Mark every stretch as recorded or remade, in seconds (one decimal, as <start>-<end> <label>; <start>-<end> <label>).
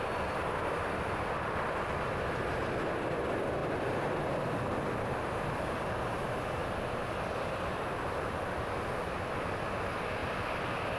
0.0-0.4 recorded; 0.4-2.5 remade; 2.5-3.6 recorded; 3.6-4.2 remade; 4.2-6.6 recorded; 6.6-8.4 remade; 8.4-10.2 recorded; 10.2-11.0 remade